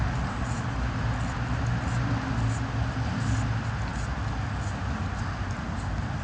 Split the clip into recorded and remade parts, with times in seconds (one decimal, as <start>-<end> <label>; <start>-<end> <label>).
0.0-6.2 recorded